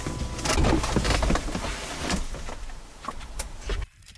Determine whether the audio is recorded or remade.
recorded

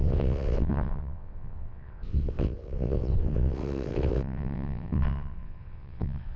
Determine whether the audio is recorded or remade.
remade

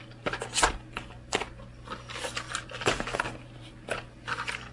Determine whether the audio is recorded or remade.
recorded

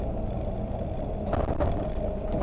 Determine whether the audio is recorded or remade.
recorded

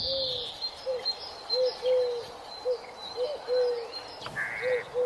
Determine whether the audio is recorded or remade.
recorded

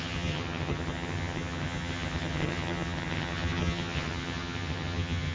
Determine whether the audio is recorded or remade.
remade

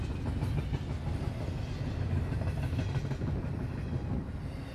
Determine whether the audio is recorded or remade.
recorded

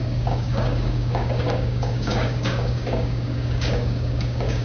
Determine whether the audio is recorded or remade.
remade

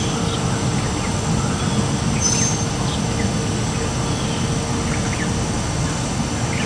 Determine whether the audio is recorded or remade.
recorded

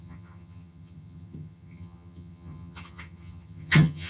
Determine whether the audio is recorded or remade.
remade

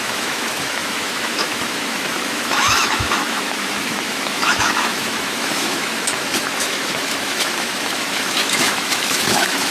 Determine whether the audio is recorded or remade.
remade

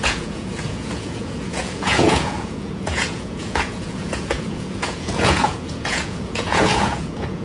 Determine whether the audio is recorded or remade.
remade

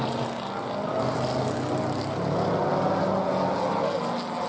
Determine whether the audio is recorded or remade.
recorded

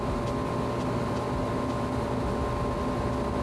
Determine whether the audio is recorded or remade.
recorded